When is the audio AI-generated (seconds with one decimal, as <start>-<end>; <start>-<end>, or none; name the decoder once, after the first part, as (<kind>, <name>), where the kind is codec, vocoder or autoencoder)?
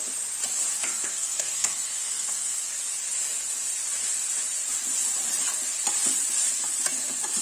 0.8-2.8 (codec, SNAC)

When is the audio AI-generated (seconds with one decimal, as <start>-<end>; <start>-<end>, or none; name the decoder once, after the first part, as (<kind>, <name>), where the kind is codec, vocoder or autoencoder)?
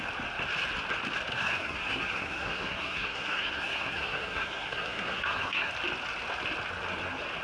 1.3-5.7 (codec, SNAC)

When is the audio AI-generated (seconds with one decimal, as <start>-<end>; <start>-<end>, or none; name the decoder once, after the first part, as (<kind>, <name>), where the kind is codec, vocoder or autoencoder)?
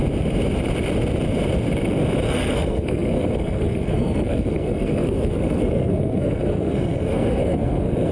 2.3-8.1 (codec, SNAC)